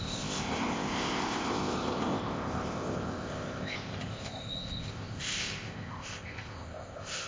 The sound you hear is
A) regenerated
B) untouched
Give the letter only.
A